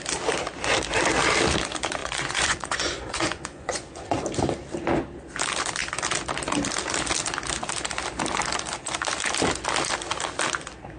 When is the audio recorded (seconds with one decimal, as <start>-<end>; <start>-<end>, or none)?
0.0-2.0; 4.2-11.0